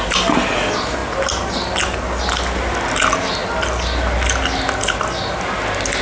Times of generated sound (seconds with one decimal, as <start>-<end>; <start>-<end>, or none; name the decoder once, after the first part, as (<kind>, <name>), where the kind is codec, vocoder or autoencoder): none